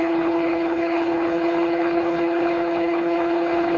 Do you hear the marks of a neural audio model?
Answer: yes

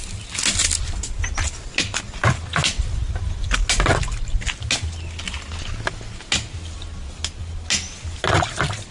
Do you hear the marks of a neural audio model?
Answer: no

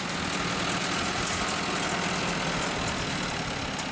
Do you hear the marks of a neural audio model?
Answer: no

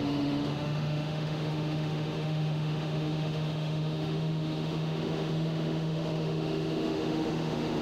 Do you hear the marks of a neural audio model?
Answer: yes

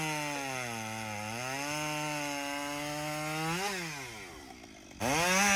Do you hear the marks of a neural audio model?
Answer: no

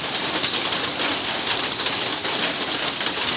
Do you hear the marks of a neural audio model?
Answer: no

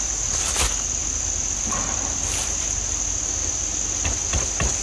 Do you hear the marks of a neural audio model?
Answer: no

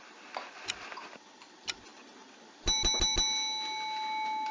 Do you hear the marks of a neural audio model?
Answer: no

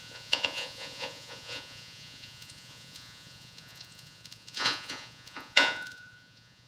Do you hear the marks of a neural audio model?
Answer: yes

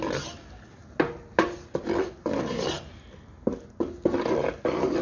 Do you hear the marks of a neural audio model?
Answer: no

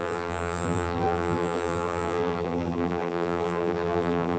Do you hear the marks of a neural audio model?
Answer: yes